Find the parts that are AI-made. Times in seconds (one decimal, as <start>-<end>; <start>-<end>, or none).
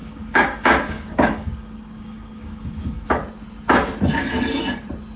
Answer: 0.0-3.1